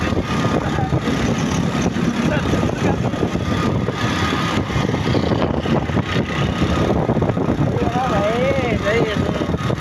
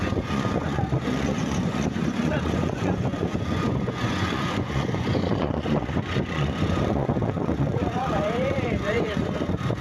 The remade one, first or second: second